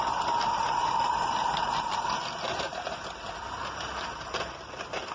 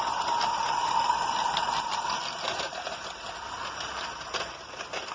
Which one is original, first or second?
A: first